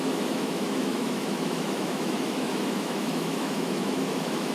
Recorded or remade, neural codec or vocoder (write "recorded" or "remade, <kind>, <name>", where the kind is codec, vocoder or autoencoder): remade, autoencoder, DAC-VAE